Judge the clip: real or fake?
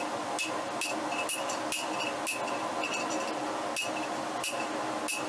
real